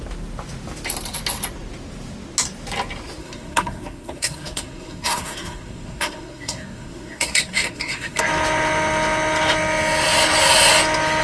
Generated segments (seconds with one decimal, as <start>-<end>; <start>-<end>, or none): 3.2-8.2